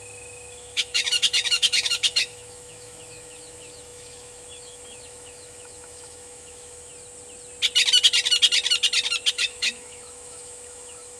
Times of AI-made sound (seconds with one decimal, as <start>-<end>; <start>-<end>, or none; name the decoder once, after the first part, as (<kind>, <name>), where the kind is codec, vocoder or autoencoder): 0.0-6.9 (autoencoder, DAC-VAE); 9.3-11.2